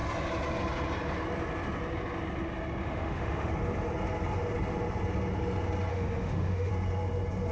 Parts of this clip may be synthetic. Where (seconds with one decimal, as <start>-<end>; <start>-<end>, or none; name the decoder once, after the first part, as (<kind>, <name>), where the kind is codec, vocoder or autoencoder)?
2.8-3.5 (autoencoder, DAC-VAE); 5.9-6.7